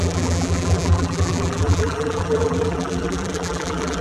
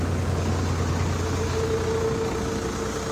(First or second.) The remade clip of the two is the first